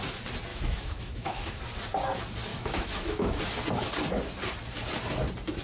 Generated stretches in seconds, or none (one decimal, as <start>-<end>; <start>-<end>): 0.5-1.6; 2.5-3.4